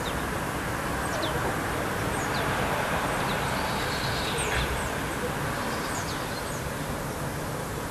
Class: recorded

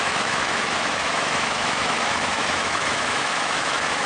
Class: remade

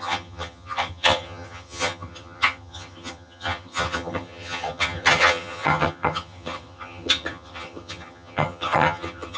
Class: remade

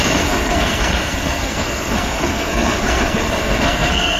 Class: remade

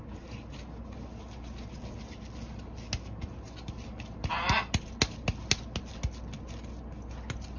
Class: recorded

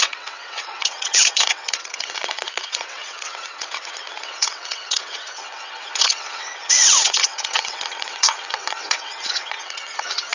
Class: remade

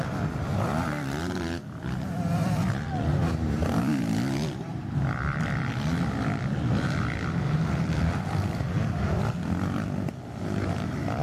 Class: remade